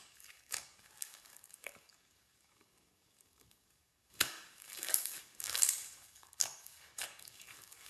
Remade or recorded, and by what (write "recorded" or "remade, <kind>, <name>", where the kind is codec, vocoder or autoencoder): remade, codec, DAC